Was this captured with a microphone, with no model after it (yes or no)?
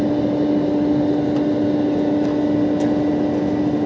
yes